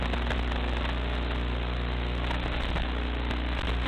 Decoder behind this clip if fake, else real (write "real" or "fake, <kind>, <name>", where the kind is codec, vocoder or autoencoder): real